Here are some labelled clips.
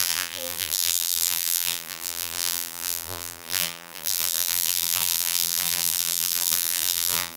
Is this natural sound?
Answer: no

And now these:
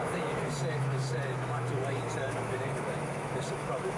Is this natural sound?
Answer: no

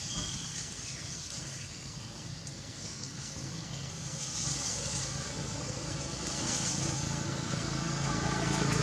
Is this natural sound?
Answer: no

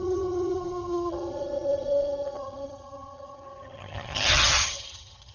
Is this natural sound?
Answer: no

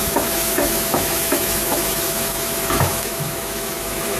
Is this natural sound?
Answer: no